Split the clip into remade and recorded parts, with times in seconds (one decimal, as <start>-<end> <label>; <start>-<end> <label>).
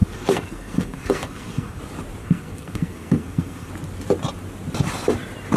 0.0-1.8 remade; 1.8-2.2 recorded; 2.2-3.7 remade; 3.7-5.6 recorded